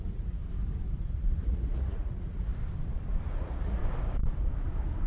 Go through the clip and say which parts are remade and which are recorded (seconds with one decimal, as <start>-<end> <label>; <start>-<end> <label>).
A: 0.0-0.4 remade; 0.4-1.0 recorded; 1.0-2.5 remade; 2.5-3.3 recorded; 3.3-3.8 remade; 3.8-5.1 recorded